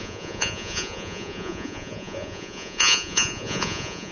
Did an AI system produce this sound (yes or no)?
yes